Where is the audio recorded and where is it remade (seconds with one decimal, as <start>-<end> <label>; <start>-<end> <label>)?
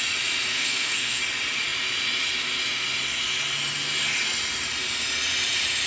0.0-0.5 recorded; 0.5-1.2 remade; 1.2-5.9 recorded